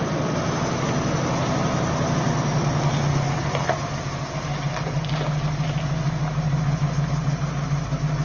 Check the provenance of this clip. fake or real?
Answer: real